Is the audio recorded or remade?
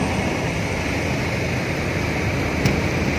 recorded